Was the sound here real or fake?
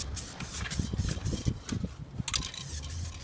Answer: real